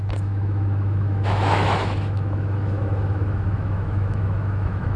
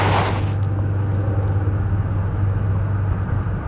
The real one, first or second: second